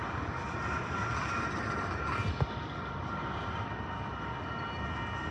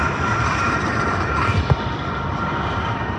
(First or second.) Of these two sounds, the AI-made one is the second